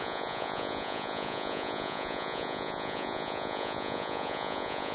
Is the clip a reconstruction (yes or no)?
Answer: yes